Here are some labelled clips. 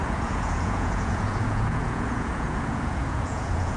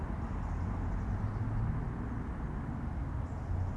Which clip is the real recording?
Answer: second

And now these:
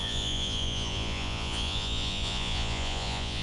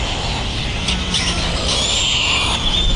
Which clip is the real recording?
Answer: second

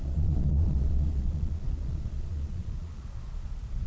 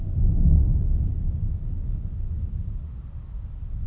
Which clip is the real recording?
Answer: second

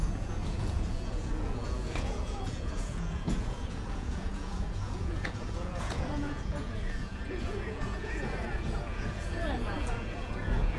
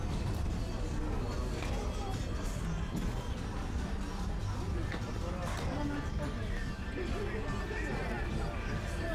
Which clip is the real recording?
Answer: second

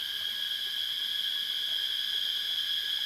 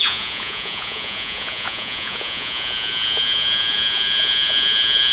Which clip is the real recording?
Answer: first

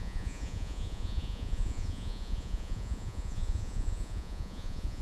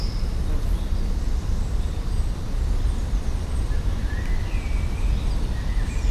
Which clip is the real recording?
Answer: second